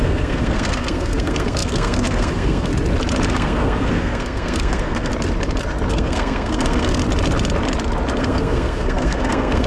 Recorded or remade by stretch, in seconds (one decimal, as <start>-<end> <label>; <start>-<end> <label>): 0.0-2.7 remade; 2.7-3.3 recorded; 3.3-5.1 remade; 5.1-5.9 recorded; 5.9-7.0 remade; 7.0-8.2 recorded; 8.2-9.7 remade